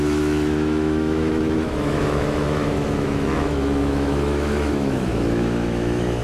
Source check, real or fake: fake